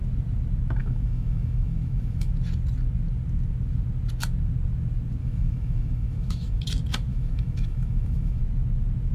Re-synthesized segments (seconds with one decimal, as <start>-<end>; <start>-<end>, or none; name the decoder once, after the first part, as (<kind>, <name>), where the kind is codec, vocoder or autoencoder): 0.8-2.3 (autoencoder, DAC-VAE); 5.2-6.6; 7.1-8.4

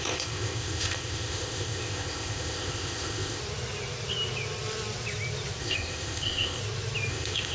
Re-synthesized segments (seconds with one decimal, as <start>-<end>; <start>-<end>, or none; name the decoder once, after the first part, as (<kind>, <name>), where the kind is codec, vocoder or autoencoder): 0.0-3.4 (codec, ZipCodec); 5.6-6.6; 7.1-7.5

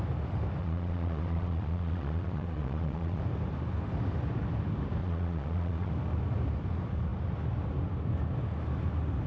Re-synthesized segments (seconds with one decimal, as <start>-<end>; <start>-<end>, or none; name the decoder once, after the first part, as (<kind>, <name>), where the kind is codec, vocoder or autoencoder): 0.6-3.2 (vocoder, Vocos); 5.0-5.9